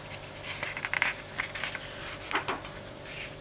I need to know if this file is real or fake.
real